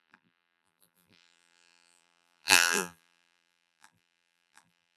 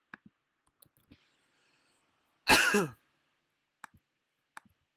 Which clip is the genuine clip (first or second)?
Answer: second